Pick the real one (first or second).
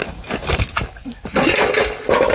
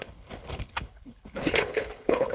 first